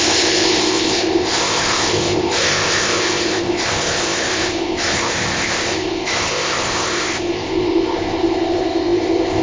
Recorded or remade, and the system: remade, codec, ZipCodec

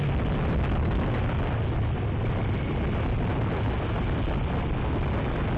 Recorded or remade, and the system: recorded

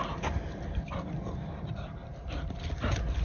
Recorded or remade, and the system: recorded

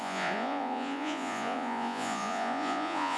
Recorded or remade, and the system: remade, vocoder, Vocos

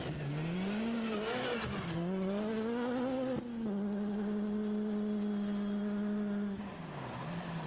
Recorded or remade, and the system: recorded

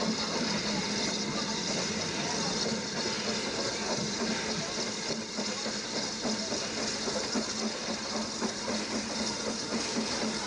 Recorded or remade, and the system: recorded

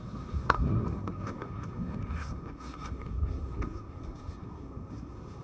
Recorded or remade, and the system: remade, codec, SNAC